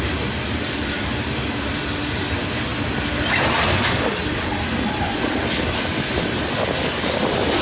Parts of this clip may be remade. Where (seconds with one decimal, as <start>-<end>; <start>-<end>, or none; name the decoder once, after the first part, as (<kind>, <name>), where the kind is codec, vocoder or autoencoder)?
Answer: none